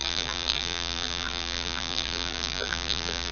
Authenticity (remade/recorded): remade